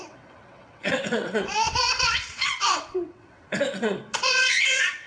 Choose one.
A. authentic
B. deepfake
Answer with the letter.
B